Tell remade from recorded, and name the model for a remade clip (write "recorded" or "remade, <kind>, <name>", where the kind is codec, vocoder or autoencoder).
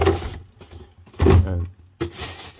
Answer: recorded